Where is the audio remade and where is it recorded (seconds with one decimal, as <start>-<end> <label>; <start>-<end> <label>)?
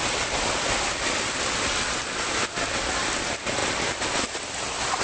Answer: 0.0-5.0 recorded